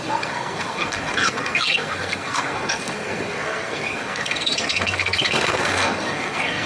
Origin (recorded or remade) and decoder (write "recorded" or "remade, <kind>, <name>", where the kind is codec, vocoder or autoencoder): remade, codec, SNAC